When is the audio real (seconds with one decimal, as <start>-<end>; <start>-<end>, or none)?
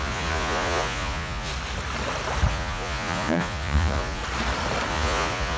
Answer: 1.5-2.5; 4.2-4.9